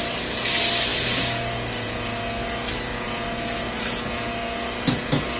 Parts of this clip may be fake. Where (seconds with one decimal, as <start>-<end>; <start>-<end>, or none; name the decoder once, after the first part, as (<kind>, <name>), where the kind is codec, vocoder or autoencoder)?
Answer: none